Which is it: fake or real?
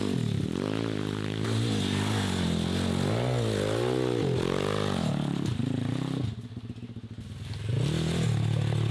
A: real